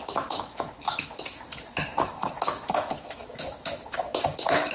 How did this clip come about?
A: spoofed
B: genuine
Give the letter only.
A